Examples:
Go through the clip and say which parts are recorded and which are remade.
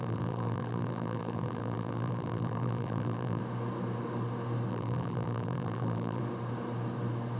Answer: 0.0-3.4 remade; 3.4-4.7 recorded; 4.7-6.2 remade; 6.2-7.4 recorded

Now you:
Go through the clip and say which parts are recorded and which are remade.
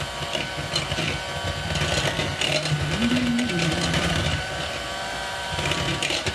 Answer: 0.0-2.3 recorded; 2.3-6.3 remade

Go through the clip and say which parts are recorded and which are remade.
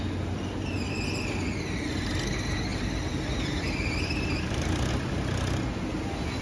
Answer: 0.0-2.7 recorded; 2.7-4.9 remade; 4.9-6.4 recorded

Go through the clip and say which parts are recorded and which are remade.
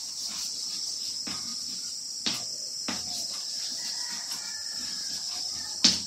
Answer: 0.0-6.1 recorded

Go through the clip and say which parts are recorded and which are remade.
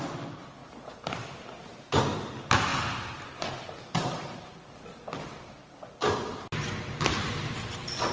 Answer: 0.0-0.6 recorded; 0.6-2.0 remade; 2.0-8.1 recorded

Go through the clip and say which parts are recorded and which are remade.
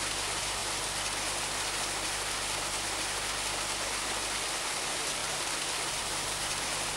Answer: 0.0-0.6 remade; 0.6-4.8 recorded; 4.8-5.2 remade; 5.2-6.0 recorded; 6.0-7.0 remade